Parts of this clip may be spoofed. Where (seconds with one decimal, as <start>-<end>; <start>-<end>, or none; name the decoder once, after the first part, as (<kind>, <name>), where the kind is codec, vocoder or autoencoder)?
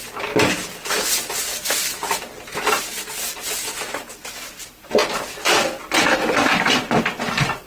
0.0-1.5 (vocoder, BigVGAN v2); 4.1-7.7